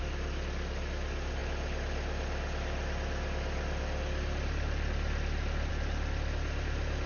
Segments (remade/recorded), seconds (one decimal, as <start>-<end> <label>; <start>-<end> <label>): 0.0-7.1 recorded